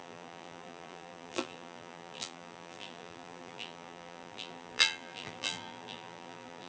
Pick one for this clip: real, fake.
fake